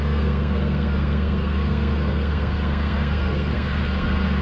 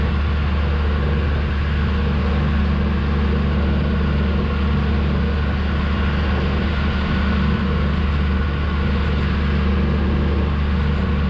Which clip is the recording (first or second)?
second